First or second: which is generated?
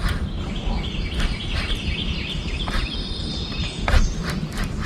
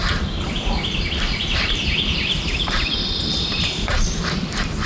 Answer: second